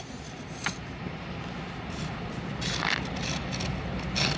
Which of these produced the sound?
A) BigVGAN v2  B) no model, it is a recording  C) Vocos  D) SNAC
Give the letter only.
B